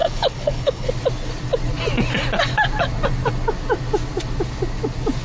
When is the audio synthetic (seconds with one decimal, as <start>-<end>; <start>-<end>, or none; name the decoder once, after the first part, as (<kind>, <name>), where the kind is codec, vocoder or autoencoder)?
0.0-0.9 (codec, HILCodec)